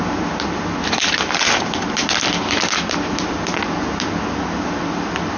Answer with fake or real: real